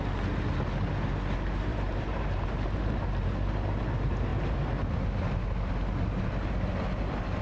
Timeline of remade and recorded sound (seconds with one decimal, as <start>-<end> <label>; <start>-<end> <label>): 0.0-1.7 recorded; 1.7-3.3 remade; 3.3-7.4 recorded